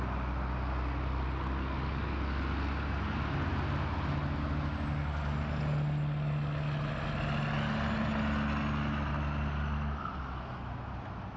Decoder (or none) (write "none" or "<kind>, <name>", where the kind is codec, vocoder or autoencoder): none